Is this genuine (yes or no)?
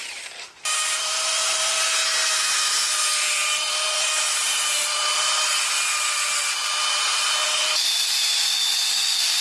no